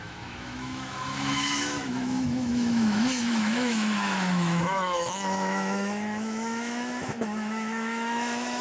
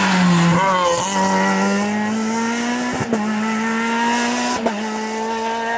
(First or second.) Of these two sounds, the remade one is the first